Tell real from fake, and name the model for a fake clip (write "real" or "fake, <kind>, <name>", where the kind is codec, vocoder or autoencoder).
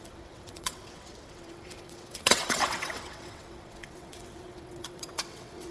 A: fake, vocoder, WaveNeXt